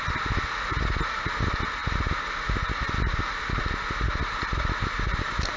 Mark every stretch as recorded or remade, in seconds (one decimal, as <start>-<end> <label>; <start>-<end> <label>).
0.0-5.6 recorded